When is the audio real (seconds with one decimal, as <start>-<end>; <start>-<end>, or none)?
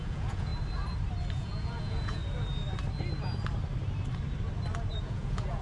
0.5-1.3; 2.2-5.0